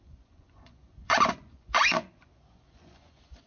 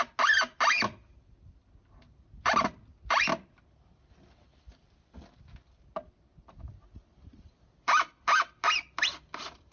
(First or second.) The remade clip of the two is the first